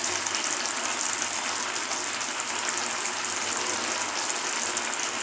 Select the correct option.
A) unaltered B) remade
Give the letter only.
A